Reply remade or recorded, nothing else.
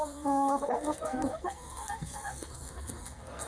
remade